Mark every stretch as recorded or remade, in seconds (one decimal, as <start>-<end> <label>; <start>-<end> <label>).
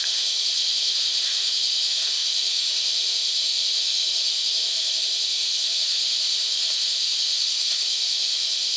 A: 0.0-8.8 remade